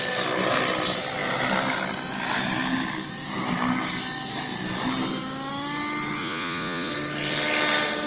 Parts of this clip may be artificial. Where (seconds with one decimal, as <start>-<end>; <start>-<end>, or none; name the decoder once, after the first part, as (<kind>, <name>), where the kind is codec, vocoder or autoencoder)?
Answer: 6.2-6.9 (vocoder, Vocos)